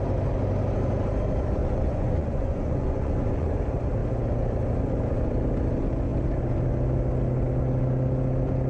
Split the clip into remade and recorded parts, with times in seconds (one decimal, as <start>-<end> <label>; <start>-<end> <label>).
0.0-1.6 recorded; 1.6-3.6 remade; 3.6-8.7 recorded